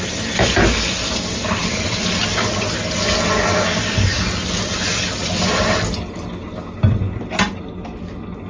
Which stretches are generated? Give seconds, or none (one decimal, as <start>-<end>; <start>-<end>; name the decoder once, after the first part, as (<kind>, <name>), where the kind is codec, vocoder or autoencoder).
none

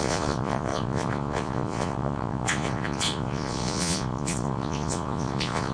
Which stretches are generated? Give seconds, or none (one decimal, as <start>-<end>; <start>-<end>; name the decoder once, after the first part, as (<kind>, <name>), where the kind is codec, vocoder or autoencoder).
0.0-5.7 (vocoder, Vocos)

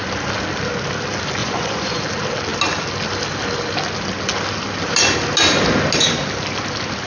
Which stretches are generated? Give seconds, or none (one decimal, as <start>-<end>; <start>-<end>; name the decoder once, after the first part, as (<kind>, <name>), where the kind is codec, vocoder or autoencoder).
1.4-2.0 (vocoder, Vocos)

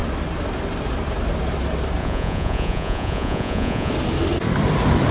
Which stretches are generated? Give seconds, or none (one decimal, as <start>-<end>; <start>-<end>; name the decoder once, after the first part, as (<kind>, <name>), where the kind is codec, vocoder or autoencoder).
2.0-3.9 (vocoder, Vocos)

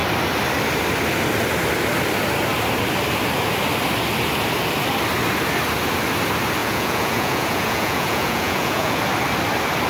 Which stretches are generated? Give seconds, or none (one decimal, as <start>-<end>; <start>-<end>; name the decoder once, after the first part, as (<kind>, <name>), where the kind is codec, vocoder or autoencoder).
6.6-9.0 (vocoder, Vocos)

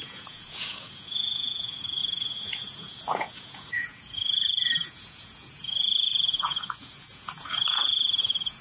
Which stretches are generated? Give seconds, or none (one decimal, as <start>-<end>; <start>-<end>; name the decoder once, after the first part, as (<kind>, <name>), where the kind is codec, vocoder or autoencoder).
0.0-8.6 (vocoder, Vocos)

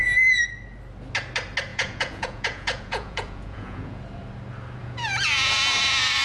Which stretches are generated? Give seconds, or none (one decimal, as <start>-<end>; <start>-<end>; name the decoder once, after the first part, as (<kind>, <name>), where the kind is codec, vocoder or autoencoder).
1.7-4.0 (vocoder, Vocos); 4.8-5.5

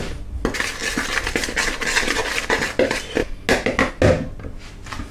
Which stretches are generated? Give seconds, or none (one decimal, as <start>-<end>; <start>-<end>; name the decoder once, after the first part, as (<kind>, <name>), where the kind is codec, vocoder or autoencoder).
none